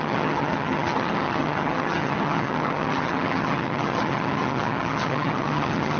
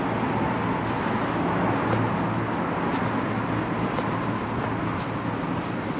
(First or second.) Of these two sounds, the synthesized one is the first